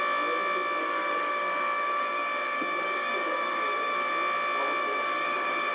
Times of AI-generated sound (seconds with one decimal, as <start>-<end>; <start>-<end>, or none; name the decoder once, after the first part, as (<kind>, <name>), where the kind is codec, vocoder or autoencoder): 0.8-4.1 (codec, DAC); 4.8-5.7